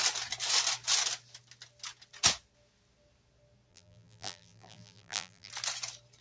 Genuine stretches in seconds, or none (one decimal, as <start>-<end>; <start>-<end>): 0.0-3.7; 5.5-6.2